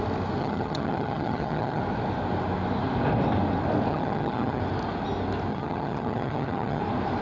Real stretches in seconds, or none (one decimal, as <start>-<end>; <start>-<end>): 0.0-0.4; 1.8-3.9; 4.6-5.5; 6.8-7.2